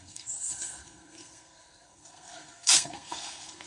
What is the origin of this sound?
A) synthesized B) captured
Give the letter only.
A